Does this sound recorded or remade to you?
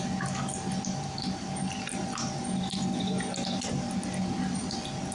recorded